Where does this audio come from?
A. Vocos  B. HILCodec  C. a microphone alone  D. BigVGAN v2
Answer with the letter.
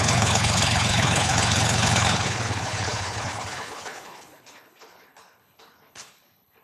B